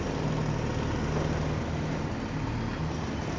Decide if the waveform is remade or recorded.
recorded